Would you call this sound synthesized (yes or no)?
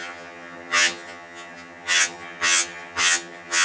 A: yes